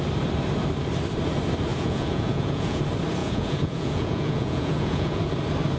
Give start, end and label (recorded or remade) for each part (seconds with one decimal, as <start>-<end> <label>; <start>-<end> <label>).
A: 0.0-1.7 recorded; 1.7-2.8 remade; 2.8-3.2 recorded; 3.2-5.2 remade; 5.2-5.8 recorded